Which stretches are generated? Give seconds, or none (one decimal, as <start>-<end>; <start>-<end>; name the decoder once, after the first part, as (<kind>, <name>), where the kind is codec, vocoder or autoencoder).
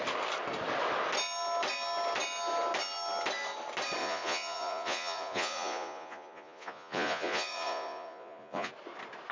4.0-8.7 (vocoder, Vocos)